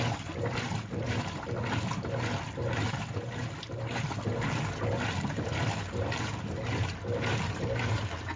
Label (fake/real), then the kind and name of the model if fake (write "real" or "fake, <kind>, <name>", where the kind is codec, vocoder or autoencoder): real